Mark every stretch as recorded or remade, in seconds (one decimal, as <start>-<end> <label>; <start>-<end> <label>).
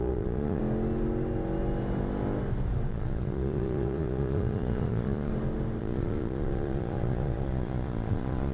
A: 0.0-0.6 remade; 0.6-2.9 recorded; 2.9-5.3 remade; 5.3-5.8 recorded; 5.8-8.5 remade